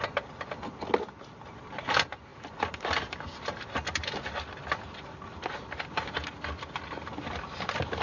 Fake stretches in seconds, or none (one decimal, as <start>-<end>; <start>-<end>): none